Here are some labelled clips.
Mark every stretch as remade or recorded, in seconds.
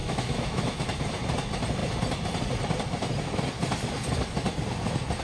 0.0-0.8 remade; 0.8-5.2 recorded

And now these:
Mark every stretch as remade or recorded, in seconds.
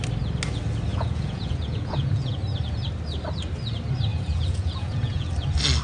0.0-0.9 recorded; 0.9-2.4 remade; 2.4-4.1 recorded; 4.1-5.3 remade; 5.3-5.8 recorded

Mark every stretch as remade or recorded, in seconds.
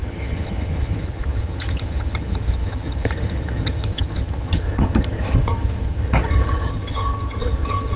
0.0-8.0 remade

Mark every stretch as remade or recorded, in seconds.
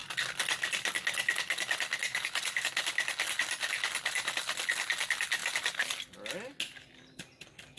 0.0-7.8 recorded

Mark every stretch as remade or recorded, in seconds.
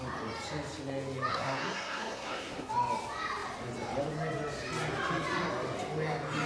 0.0-1.3 recorded; 1.3-2.7 remade; 2.7-6.5 recorded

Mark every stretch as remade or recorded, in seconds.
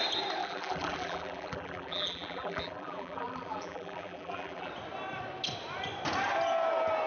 0.0-0.4 recorded; 0.4-4.7 remade; 4.7-7.1 recorded